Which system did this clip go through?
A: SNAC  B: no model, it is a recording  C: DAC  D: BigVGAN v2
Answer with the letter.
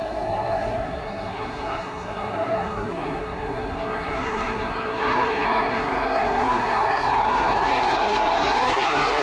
A